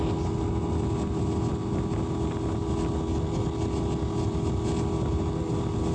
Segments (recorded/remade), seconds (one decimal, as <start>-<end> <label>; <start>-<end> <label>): 0.0-5.9 recorded